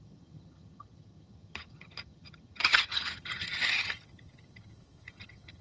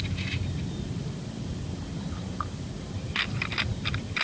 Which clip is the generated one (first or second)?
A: first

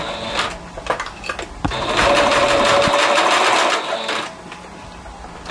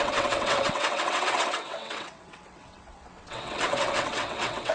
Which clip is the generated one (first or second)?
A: second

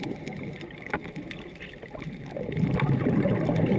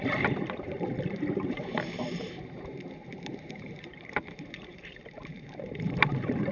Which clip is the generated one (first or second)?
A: second